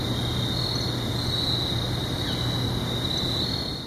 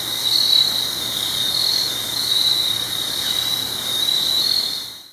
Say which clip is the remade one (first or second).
second